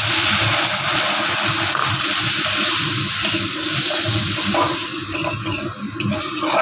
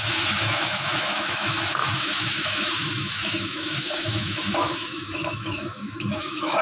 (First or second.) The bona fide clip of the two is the first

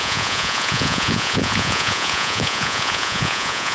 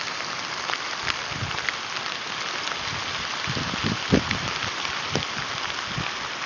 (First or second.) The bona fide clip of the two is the second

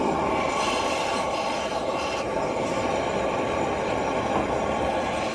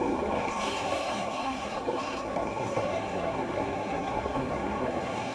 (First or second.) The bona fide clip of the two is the first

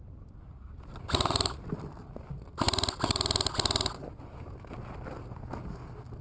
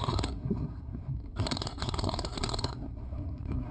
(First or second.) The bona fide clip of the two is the first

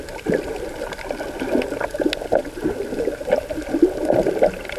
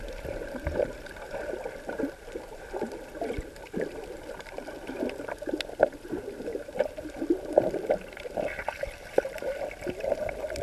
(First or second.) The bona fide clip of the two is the first